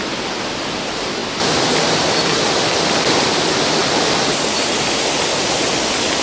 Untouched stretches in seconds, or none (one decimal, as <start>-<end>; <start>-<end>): 0.0-6.2